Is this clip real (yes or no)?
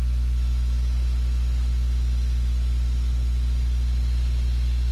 yes